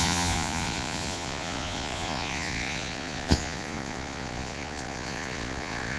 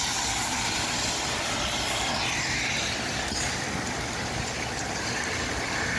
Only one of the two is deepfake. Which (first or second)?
first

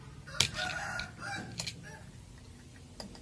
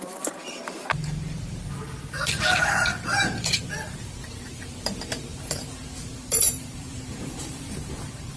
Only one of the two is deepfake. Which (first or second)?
second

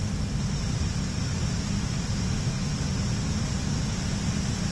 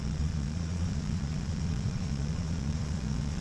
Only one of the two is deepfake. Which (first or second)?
second